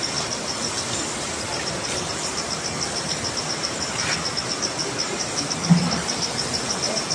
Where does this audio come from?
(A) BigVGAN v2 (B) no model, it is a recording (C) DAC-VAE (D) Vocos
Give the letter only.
B